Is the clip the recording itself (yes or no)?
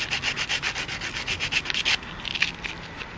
yes